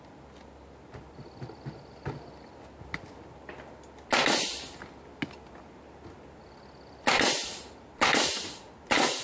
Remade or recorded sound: recorded